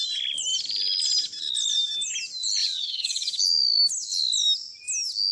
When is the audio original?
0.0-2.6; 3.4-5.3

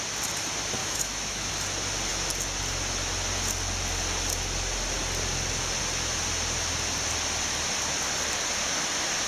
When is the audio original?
0.0-0.8; 1.5-9.3